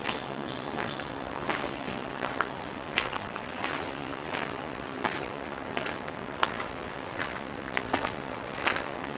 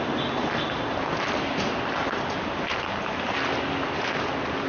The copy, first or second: first